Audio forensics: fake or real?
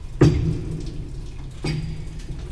real